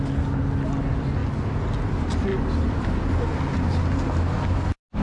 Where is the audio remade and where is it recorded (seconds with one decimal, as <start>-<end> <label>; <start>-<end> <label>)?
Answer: 0.0-5.0 recorded